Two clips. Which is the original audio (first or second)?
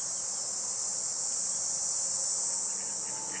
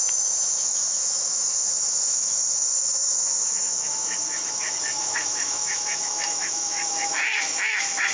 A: first